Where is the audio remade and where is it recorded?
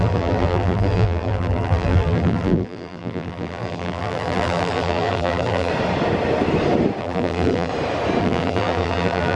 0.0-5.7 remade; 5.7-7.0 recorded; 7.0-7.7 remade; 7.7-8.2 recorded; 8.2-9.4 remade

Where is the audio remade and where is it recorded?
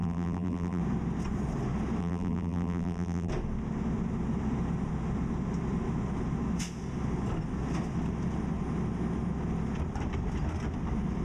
0.0-0.8 remade; 0.8-2.0 recorded; 2.0-3.3 remade; 3.3-11.2 recorded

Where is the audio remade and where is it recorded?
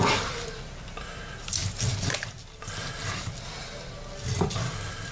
0.0-5.1 recorded